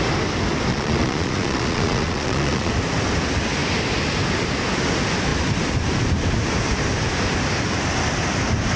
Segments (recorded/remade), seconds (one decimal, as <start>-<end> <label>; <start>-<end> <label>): 0.0-0.7 recorded; 0.7-2.7 remade; 2.7-8.8 recorded